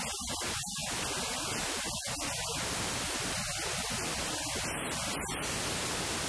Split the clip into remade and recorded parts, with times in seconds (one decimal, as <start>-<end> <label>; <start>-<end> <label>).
0.0-6.3 recorded